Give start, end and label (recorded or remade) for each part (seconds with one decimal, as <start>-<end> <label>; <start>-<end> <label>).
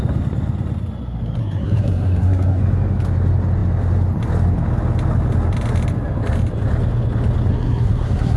0.0-1.4 recorded; 1.4-2.6 remade; 2.6-7.5 recorded; 7.5-8.4 remade